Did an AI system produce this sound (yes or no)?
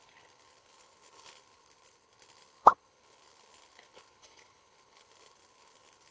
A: yes